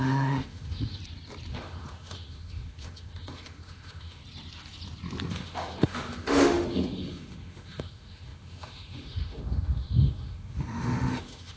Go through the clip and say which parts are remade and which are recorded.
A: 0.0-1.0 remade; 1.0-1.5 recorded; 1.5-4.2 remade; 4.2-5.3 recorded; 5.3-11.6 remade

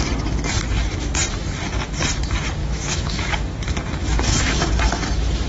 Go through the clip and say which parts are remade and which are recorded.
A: 0.0-2.6 recorded; 2.6-3.5 remade; 3.5-4.0 recorded; 4.0-4.7 remade; 4.7-5.5 recorded

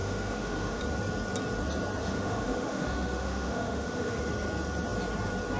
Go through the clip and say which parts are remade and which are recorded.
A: 0.0-0.8 remade; 0.8-2.0 recorded; 2.0-4.2 remade; 4.2-5.6 recorded

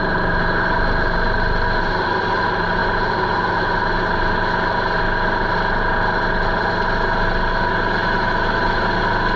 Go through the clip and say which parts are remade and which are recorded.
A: 0.0-8.0 recorded; 8.0-9.0 remade; 9.0-9.4 recorded

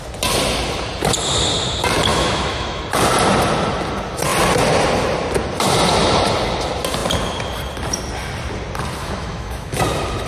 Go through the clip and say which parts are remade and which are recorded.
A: 0.0-2.1 recorded; 2.1-2.8 remade; 2.8-9.0 recorded; 9.0-9.8 remade; 9.8-10.3 recorded